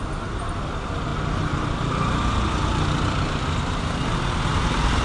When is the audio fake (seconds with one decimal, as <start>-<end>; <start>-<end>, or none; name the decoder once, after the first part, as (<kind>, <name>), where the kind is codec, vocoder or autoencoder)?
none

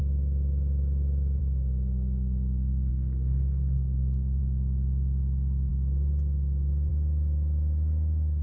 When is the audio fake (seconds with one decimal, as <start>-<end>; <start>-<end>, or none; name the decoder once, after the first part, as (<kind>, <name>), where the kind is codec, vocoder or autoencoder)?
2.9-4.4 (codec, DAC)

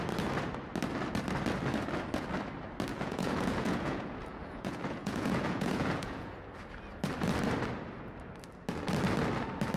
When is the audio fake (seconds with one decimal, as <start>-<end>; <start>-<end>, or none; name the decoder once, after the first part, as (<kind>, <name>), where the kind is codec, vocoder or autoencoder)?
2.9-6.3 (vocoder, Vocos)